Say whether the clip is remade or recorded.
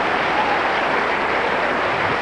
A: recorded